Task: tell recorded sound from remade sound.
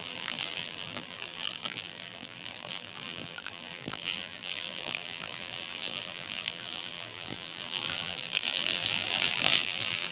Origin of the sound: remade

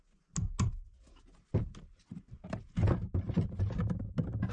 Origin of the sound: recorded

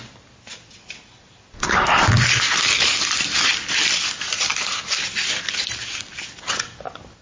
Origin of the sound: recorded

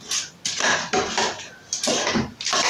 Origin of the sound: recorded